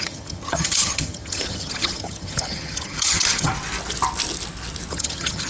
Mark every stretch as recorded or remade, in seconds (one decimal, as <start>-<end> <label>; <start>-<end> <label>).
0.0-3.5 remade; 3.5-4.9 recorded; 4.9-5.5 remade